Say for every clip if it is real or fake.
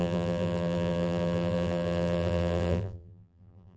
fake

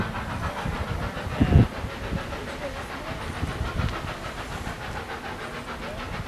real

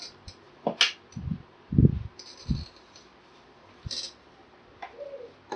real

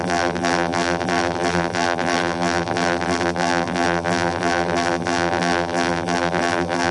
fake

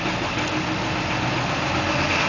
real